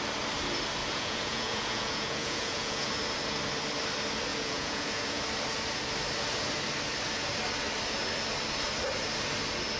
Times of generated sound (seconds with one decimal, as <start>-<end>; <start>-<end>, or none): 0.8-2.9; 4.3-5.2